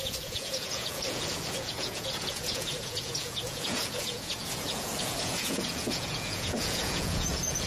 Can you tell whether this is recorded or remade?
remade